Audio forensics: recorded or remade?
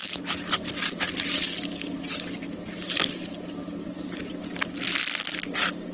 recorded